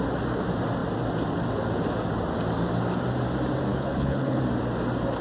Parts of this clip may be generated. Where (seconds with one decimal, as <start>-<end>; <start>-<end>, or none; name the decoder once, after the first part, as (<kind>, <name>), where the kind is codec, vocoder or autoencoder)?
3.7-4.4 (codec, HILCodec)